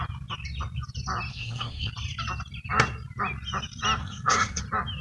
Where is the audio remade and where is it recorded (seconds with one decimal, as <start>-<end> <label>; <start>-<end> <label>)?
0.0-1.3 recorded; 1.3-1.9 remade; 1.9-4.0 recorded; 4.0-4.6 remade; 4.6-5.0 recorded